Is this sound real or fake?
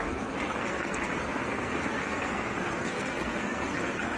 fake